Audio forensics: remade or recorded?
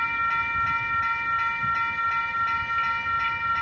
recorded